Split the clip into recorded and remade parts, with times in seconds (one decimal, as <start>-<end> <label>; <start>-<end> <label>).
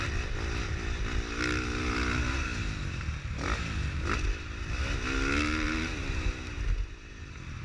0.0-2.5 remade; 2.5-7.1 recorded; 7.1-7.6 remade